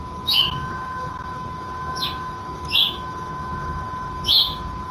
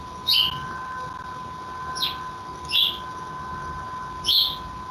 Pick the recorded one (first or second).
second